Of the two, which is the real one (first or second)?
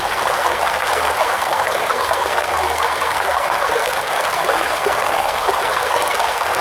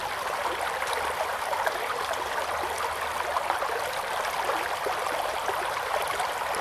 second